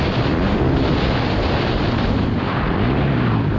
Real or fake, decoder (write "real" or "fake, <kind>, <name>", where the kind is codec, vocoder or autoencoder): fake, vocoder, BigVGAN v2